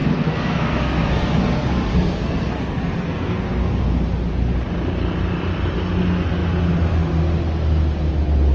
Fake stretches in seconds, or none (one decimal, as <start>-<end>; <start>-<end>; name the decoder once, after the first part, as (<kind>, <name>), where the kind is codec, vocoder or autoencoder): 0.0-3.8 (codec, SNAC)